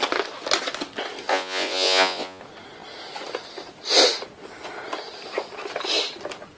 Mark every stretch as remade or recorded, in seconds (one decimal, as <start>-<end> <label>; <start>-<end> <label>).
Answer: 0.0-1.3 recorded; 1.3-2.4 remade; 2.4-6.6 recorded